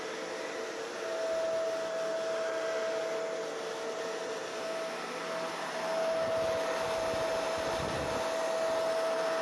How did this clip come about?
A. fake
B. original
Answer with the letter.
B